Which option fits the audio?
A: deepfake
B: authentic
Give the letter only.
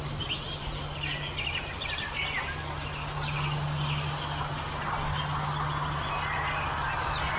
B